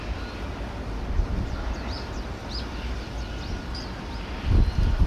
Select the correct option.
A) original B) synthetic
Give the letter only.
A